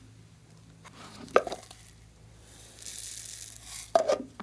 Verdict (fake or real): real